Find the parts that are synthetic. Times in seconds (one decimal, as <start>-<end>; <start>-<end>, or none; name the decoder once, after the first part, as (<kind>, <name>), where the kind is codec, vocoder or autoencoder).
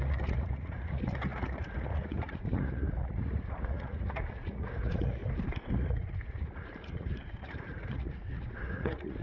0.0-5.2 (vocoder, Vocos); 5.7-9.2